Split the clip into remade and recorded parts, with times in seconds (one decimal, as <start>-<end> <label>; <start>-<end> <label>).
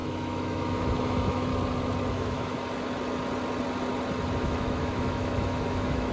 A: 0.0-1.5 remade; 1.5-2.1 recorded; 2.1-2.5 remade; 2.5-4.4 recorded; 4.4-6.1 remade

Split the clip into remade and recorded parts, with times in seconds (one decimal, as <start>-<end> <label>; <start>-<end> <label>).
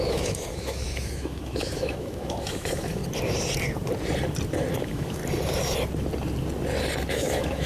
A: 0.0-3.0 remade; 3.0-4.8 recorded; 4.8-5.2 remade; 5.2-7.1 recorded; 7.1-7.7 remade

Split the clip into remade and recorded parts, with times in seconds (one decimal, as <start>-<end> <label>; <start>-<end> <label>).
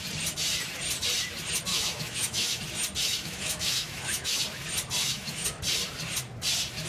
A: 0.0-1.7 recorded; 1.7-2.6 remade; 2.6-3.0 recorded; 3.0-4.4 remade; 4.4-5.0 recorded; 5.0-5.6 remade; 5.6-6.9 recorded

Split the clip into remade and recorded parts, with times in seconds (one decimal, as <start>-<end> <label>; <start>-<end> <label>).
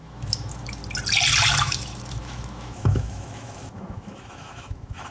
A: 0.0-0.8 remade; 0.8-1.6 recorded; 1.6-5.1 remade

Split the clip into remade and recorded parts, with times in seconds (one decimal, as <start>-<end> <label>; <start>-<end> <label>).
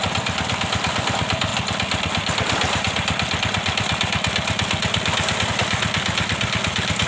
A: 0.0-7.1 recorded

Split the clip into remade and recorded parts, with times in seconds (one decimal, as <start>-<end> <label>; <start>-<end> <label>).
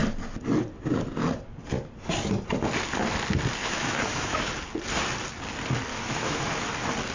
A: 0.0-3.6 recorded; 3.6-4.5 remade; 4.5-5.9 recorded; 5.9-6.5 remade; 6.5-7.1 recorded